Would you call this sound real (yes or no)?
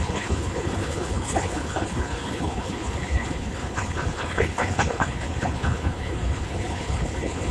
no